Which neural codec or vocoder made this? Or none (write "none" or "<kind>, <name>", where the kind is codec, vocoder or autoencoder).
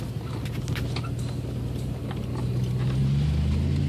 none